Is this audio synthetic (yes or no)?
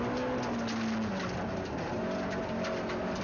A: no